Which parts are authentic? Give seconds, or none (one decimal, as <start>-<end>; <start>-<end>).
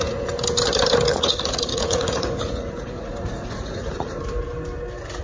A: 0.0-1.1; 4.2-5.2